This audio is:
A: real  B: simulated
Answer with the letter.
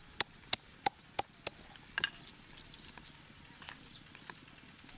A